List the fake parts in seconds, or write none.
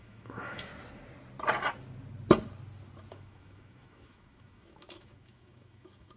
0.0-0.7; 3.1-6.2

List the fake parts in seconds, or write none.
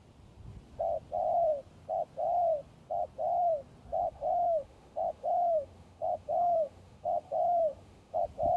4.0-8.2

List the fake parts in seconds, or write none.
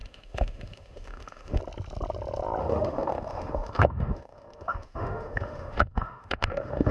0.0-1.6; 2.6-6.9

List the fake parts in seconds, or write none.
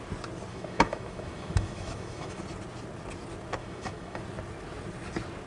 0.5-2.4; 3.6-4.2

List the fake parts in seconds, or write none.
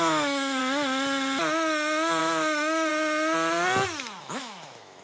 0.0-0.6; 2.2-2.9; 4.2-5.0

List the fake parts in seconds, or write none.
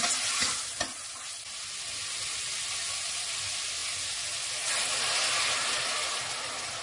none